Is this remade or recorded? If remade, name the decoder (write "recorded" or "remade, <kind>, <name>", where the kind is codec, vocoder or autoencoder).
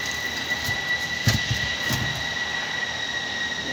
recorded